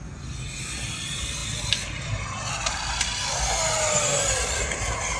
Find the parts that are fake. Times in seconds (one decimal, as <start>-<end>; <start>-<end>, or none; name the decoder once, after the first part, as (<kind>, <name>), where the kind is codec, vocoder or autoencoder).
none